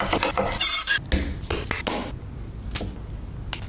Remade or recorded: recorded